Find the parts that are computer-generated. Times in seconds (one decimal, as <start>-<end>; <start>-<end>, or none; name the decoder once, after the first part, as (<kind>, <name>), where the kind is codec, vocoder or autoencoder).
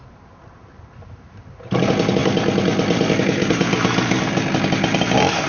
none